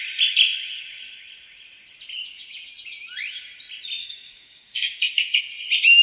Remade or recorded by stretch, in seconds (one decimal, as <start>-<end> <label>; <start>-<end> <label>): 0.0-4.0 recorded; 4.0-5.4 remade; 5.4-6.0 recorded